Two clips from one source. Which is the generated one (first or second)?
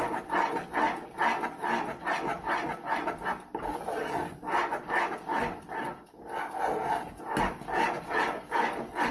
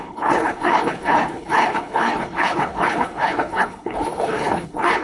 second